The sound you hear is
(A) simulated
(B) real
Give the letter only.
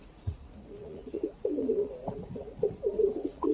A